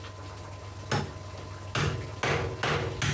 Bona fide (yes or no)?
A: yes